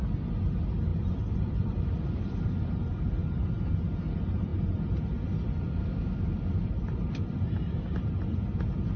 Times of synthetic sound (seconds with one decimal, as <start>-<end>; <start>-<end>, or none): 0.9-3.5